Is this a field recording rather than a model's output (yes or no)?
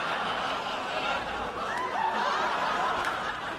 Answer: yes